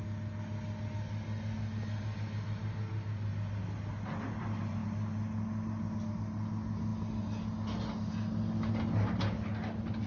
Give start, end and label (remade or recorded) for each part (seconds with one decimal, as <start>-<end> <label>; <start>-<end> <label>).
0.0-10.1 recorded